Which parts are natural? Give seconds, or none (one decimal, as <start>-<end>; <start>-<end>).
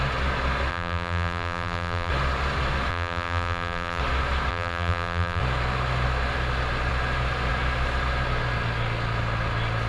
0.0-0.7; 2.1-2.9; 4.0-4.5; 5.4-9.9